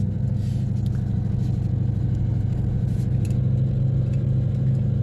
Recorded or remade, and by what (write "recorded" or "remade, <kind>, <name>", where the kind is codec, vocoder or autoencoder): recorded